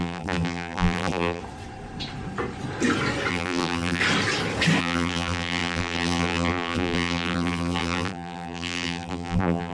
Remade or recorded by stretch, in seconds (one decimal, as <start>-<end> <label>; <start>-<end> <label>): 0.0-1.4 remade; 1.4-3.3 recorded; 3.3-4.0 remade; 4.0-4.8 recorded; 4.8-9.7 remade